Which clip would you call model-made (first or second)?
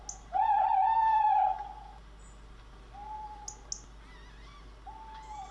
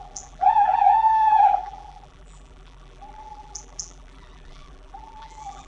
second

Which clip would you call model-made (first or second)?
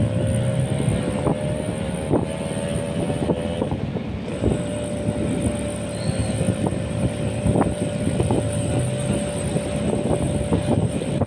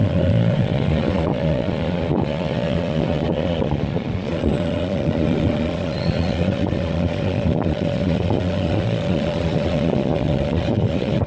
second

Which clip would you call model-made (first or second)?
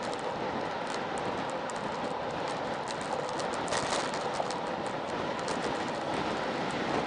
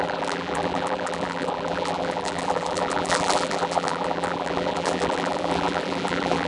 second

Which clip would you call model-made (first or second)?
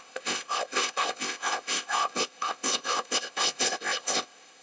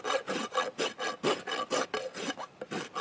first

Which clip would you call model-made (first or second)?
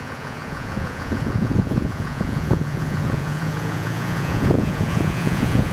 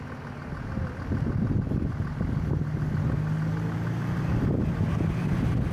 first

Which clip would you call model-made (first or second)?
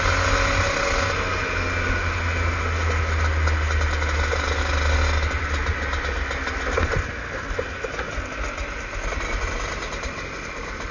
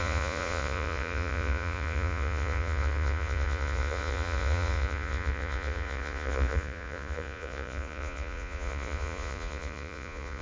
second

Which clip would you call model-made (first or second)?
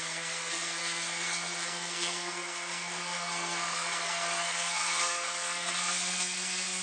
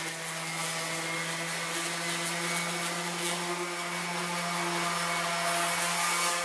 first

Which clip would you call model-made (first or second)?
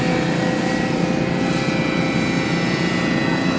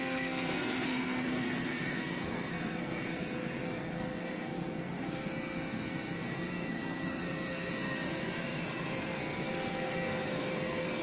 second